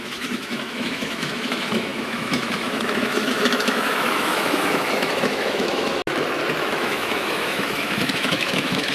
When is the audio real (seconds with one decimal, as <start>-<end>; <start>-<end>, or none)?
6.0-6.6